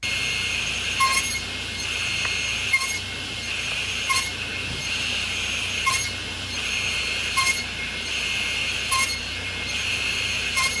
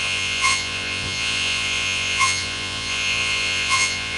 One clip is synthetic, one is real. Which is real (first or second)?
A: first